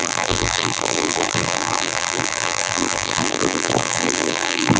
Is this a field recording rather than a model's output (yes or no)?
no